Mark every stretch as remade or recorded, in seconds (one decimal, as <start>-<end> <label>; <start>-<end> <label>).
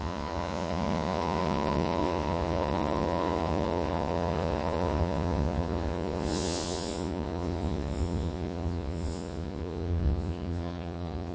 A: 0.0-11.3 remade